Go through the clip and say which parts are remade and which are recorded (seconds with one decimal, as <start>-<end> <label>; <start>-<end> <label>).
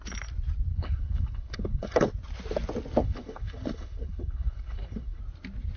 0.0-0.7 recorded; 0.7-2.1 remade; 2.1-3.0 recorded; 3.0-5.2 remade; 5.2-5.8 recorded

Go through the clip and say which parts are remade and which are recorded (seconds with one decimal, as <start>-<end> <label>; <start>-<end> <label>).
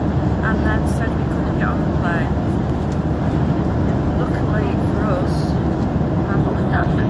0.0-6.4 recorded; 6.4-7.1 remade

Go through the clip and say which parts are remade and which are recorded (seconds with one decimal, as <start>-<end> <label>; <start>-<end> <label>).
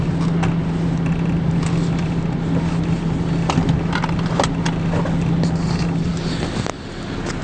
0.0-7.4 recorded